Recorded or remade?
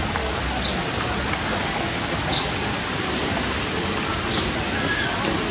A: recorded